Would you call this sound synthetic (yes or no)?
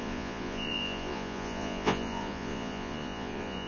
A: yes